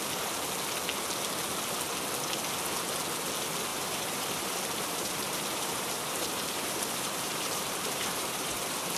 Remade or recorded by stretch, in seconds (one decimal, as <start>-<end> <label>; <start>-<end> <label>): 0.0-3.7 recorded; 3.7-8.6 remade; 8.6-9.0 recorded